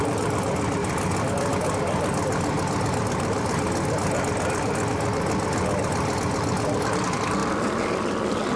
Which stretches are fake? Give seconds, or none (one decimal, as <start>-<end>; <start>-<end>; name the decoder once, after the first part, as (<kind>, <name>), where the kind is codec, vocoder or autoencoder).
none